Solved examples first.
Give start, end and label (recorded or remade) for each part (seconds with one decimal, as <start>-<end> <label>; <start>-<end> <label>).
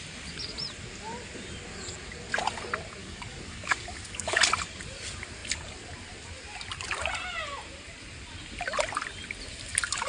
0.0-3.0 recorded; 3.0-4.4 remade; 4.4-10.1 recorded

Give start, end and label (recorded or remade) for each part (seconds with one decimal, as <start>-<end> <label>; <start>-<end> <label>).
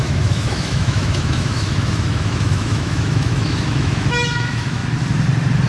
0.0-4.8 remade; 4.8-5.7 recorded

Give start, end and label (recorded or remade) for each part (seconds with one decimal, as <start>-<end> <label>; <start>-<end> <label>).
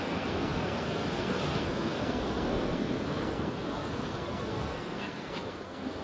0.0-6.0 remade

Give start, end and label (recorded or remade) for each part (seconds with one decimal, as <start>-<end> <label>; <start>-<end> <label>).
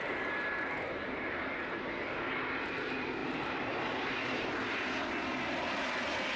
0.0-3.2 recorded; 3.2-4.5 remade; 4.5-6.4 recorded